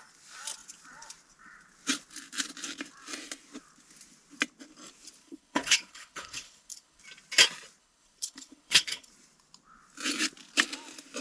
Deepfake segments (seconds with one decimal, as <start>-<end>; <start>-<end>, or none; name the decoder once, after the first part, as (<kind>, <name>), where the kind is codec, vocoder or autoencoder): 5.2-7.0 (codec, HILCodec); 7.8-9.1